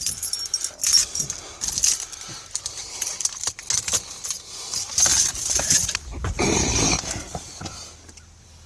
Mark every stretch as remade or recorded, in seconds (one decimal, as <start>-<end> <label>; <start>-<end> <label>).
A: 0.0-2.8 recorded; 2.8-3.7 remade; 3.7-5.1 recorded; 5.1-7.6 remade; 7.6-8.7 recorded